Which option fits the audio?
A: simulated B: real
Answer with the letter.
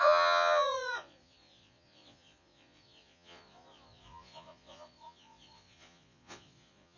A